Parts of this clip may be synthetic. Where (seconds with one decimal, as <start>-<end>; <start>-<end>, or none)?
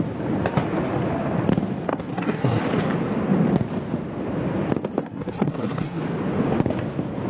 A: 1.9-2.6; 5.0-6.0